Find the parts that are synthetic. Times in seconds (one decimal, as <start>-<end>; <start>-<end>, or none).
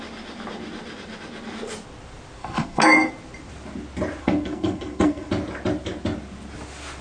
2.4-3.1; 4.2-5.3